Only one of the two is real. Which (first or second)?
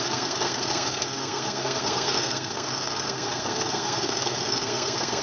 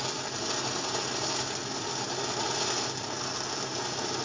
second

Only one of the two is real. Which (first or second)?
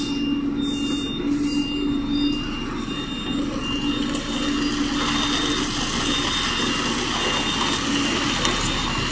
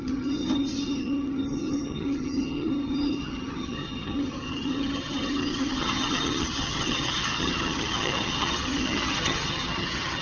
first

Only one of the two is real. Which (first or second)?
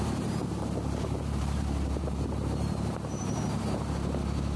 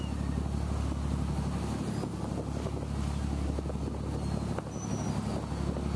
second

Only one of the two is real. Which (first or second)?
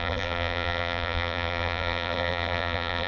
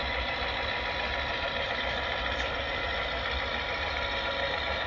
second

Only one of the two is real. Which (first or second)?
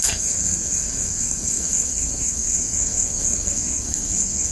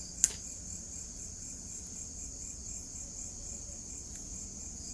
second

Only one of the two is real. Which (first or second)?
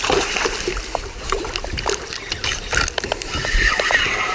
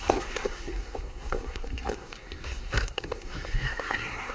first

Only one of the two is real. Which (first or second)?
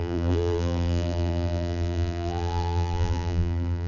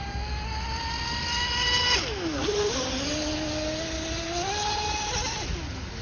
second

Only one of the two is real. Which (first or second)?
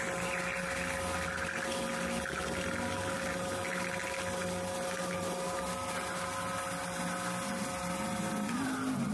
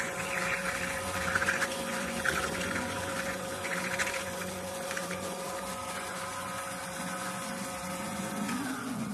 first